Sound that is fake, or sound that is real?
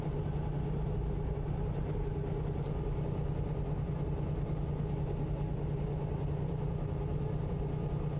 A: real